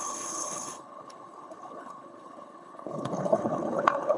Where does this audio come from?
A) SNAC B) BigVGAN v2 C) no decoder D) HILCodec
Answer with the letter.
D